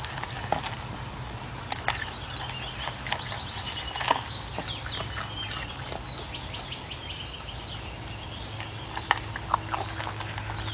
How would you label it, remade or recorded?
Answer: recorded